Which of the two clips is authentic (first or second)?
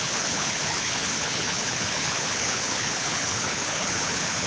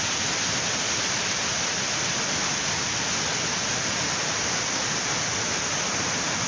second